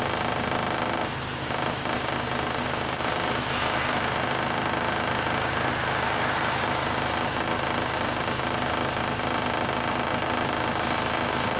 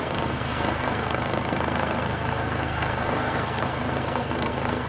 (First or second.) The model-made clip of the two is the second